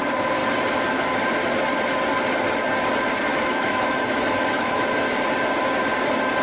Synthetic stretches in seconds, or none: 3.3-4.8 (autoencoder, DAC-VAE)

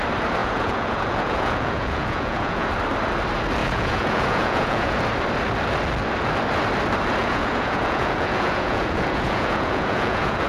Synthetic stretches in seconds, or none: 0.4-2.7 (vocoder, Vocos); 3.6-5.0; 7.2-10.5